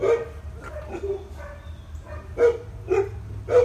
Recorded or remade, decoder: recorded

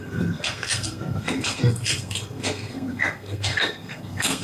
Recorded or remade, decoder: remade, codec, SNAC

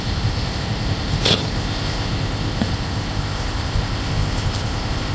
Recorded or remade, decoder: remade, codec, ZipCodec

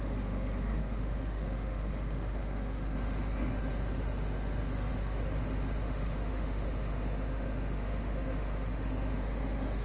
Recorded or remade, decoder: remade, autoencoder, DAC-VAE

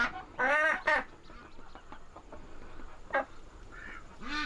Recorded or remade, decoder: recorded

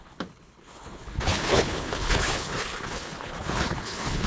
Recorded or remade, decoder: remade, codec, HILCodec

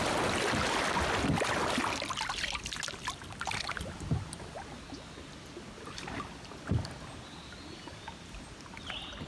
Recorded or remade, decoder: recorded